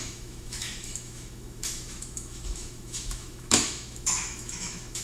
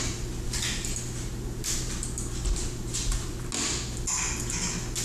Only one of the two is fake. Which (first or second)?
first